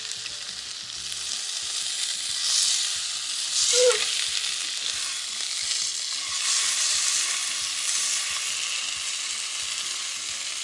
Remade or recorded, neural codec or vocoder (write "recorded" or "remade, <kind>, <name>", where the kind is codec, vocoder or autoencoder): recorded